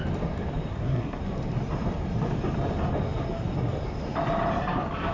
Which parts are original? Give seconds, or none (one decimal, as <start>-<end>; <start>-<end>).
0.0-0.7; 1.2-5.1